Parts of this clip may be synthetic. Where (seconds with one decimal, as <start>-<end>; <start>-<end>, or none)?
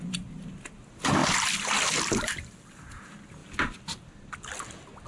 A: 1.2-3.0